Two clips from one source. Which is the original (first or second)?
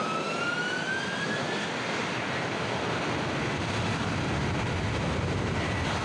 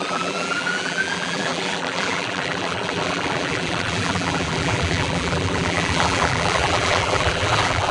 first